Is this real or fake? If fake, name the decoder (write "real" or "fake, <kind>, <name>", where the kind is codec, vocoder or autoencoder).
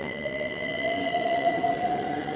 fake, vocoder, WaveNeXt